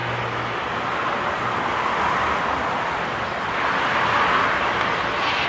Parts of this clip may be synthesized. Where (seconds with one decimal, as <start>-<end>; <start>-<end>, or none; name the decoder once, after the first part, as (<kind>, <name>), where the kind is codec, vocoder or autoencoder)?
none